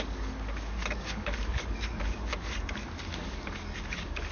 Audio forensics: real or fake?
fake